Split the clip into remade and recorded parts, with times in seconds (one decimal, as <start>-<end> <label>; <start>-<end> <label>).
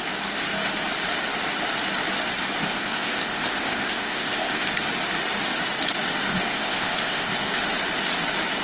0.0-2.7 recorded; 2.7-4.7 remade; 4.7-6.3 recorded; 6.3-7.5 remade; 7.5-8.6 recorded